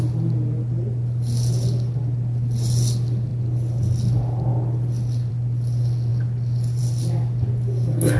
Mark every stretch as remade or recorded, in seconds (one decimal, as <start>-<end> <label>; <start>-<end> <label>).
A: 0.0-8.2 recorded